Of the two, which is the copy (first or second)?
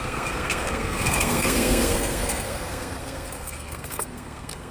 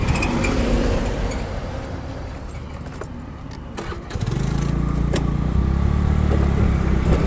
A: first